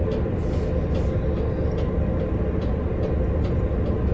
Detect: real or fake real